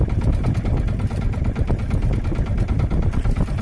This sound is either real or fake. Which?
real